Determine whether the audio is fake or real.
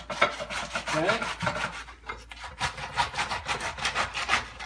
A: real